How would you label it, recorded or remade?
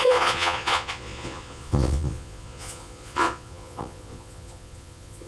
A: remade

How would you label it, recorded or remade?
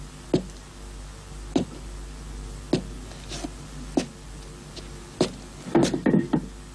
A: recorded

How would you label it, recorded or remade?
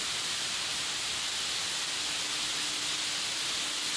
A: recorded